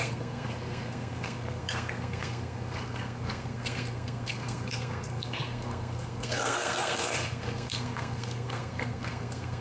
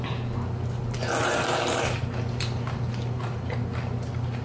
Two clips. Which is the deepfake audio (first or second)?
first